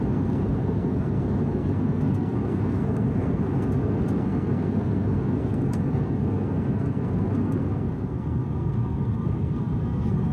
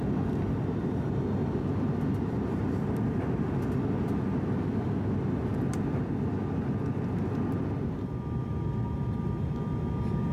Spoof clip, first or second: first